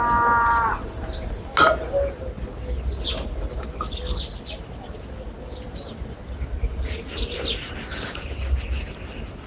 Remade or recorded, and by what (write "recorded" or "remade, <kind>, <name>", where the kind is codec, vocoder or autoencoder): recorded